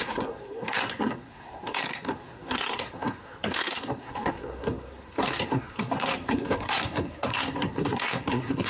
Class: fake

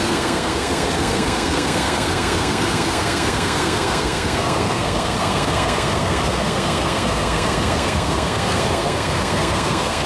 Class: fake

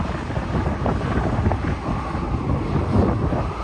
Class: real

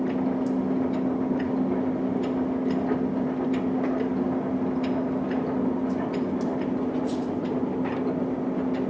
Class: real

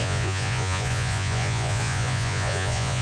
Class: fake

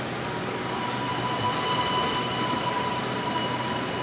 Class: real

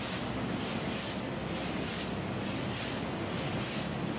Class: real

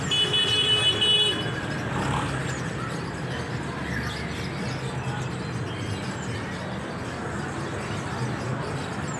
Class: real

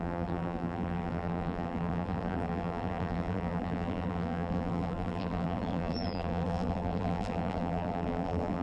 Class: fake